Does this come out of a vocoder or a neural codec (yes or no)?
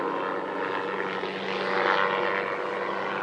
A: no